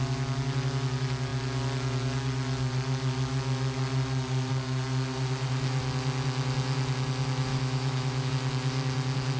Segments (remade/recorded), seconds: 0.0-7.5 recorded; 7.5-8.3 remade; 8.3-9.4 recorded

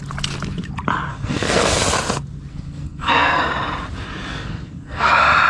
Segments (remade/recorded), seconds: 0.0-1.1 recorded; 1.1-1.8 remade; 1.8-2.5 recorded; 2.5-3.4 remade; 3.4-4.3 recorded; 4.3-5.1 remade; 5.1-5.5 recorded

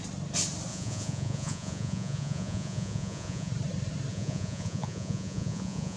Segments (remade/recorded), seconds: 0.0-0.7 recorded; 0.7-3.5 remade; 3.5-4.1 recorded; 4.1-6.0 remade

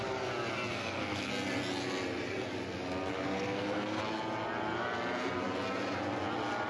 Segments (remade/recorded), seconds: 0.0-0.7 recorded; 0.7-1.3 remade; 1.3-3.1 recorded; 3.1-4.0 remade; 4.0-6.7 recorded

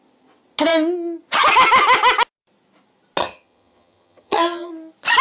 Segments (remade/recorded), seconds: 0.0-3.2 recorded; 3.2-4.7 remade; 4.7-5.2 recorded